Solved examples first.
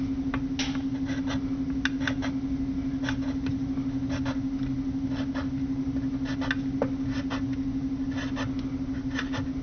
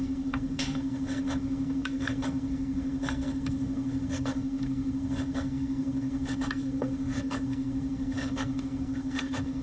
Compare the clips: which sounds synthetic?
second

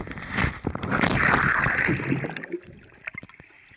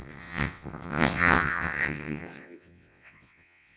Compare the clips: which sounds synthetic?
second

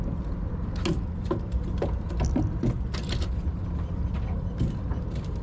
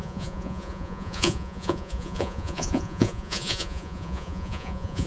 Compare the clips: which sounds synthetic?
second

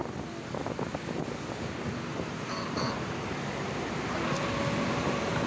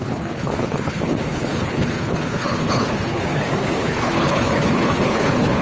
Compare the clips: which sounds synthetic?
second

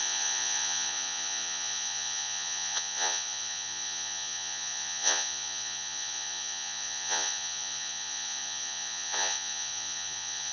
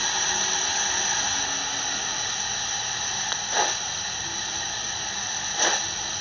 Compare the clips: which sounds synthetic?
first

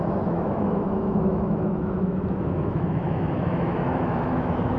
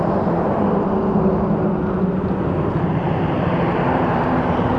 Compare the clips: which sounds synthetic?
first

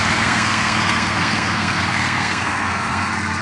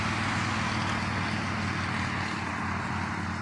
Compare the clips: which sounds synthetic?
first